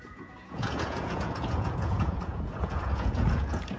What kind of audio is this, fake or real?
fake